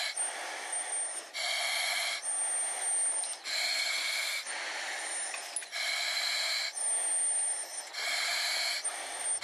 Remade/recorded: recorded